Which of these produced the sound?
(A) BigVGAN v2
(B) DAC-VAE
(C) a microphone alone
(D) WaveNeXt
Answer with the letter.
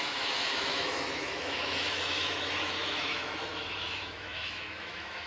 B